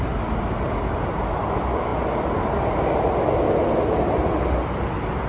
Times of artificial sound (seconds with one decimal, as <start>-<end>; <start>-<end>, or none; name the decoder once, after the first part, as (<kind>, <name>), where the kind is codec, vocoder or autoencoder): none